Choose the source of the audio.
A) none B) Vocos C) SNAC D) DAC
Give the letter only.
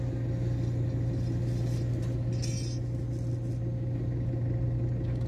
A